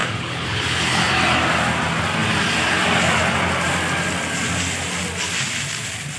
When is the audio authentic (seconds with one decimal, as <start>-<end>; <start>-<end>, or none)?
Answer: 1.1-6.2